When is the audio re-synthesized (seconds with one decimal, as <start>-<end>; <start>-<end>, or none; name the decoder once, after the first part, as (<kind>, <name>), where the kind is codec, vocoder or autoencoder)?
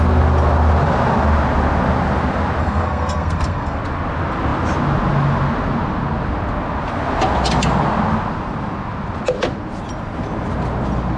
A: 2.6-3.8 (codec, SNAC)